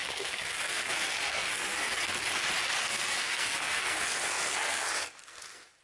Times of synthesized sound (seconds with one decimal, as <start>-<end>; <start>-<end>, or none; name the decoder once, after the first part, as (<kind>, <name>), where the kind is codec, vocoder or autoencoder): 0.0-2.1 (codec, SNAC); 2.8-5.8